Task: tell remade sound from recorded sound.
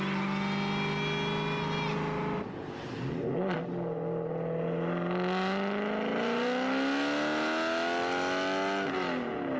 recorded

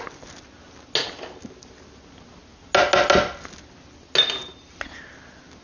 recorded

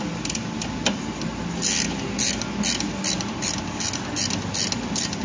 recorded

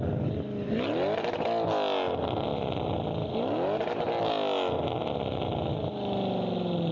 recorded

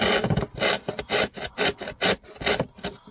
recorded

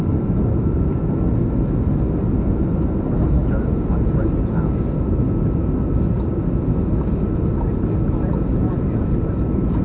recorded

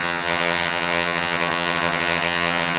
remade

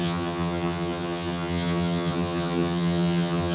remade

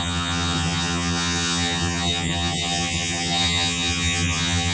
remade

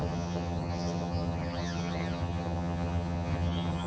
remade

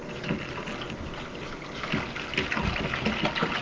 recorded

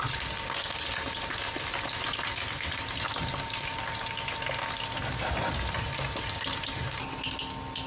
recorded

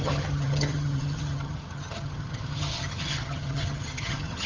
remade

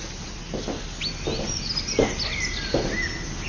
recorded